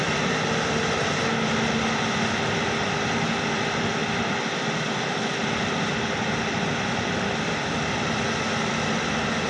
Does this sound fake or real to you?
real